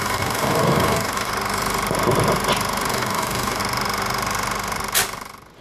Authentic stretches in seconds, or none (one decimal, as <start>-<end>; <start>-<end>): 1.3-2.9; 3.6-5.6